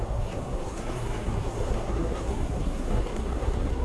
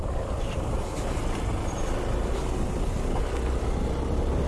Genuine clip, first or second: second